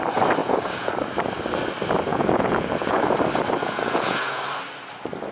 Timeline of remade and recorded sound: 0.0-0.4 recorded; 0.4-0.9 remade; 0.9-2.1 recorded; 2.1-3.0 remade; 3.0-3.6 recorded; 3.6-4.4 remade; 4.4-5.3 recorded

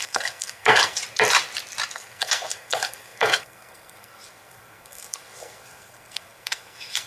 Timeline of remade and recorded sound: 0.0-1.0 remade; 1.0-1.9 recorded; 1.9-7.1 remade